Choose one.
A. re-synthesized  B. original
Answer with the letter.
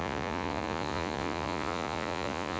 A